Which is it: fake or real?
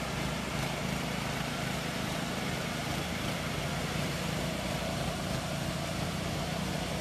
fake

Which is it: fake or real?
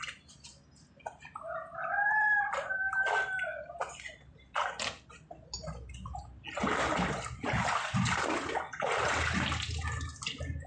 real